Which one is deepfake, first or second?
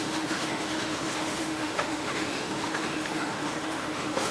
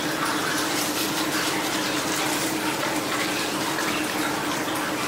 first